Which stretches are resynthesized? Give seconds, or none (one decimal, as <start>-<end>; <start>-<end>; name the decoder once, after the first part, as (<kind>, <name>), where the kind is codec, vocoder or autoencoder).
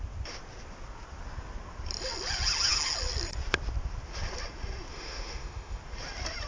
4.9-5.8 (autoencoder, DAC-VAE)